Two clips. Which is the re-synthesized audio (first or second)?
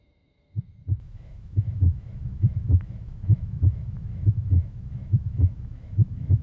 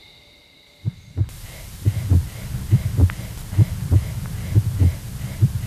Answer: first